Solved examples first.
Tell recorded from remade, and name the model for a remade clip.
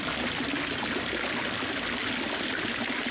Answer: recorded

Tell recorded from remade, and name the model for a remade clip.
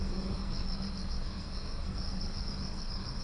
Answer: remade, codec, SNAC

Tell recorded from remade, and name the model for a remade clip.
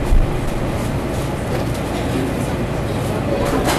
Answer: recorded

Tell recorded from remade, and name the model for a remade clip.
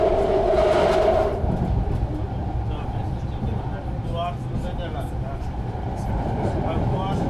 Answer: recorded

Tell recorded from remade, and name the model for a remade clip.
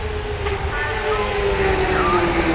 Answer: recorded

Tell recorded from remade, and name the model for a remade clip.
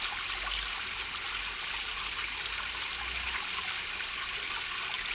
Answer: recorded